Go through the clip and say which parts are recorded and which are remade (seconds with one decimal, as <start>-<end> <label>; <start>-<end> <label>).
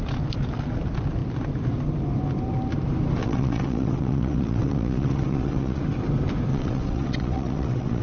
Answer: 0.0-3.2 recorded; 3.2-5.8 remade; 5.8-6.5 recorded; 6.5-8.0 remade